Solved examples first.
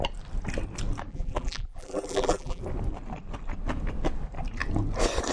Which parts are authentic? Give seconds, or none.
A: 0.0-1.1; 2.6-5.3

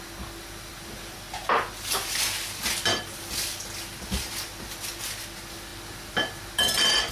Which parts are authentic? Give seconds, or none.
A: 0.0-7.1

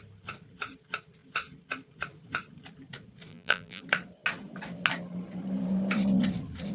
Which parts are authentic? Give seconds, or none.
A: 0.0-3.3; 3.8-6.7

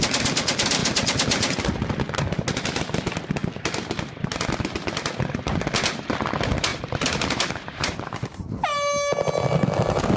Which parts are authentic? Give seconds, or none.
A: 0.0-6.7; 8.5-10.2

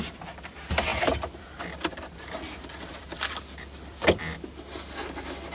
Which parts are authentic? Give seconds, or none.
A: 0.0-0.9; 4.2-5.5